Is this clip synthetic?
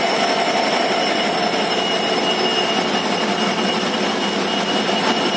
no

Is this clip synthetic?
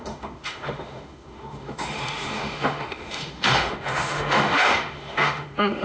yes